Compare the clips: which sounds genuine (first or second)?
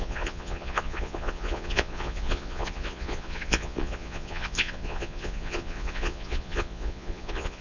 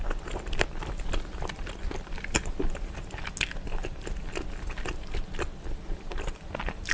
second